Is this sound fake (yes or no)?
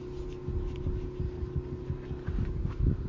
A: no